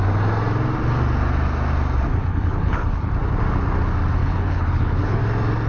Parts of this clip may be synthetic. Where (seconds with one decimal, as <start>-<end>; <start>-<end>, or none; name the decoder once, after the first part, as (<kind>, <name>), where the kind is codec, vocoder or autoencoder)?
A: 2.2-3.1 (codec, HILCodec); 4.2-5.2